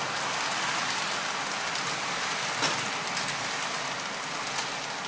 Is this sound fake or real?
real